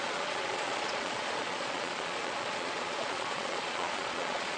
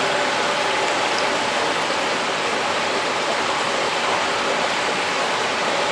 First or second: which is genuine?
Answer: second